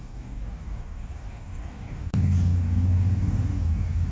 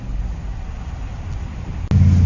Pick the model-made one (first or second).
first